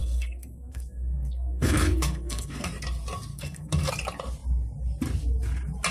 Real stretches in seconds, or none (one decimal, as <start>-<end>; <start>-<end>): 2.7-3.3; 3.9-5.9